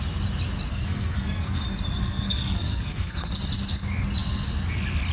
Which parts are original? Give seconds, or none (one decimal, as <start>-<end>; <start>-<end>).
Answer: 0.0-0.7; 1.6-2.0; 3.3-5.1